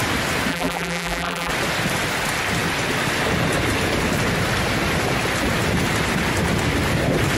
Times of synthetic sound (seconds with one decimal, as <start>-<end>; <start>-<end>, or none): 0.5-1.5